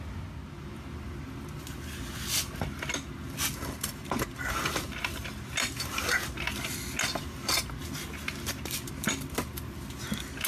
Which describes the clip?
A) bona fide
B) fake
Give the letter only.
A